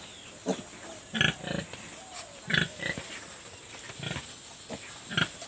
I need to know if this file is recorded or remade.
recorded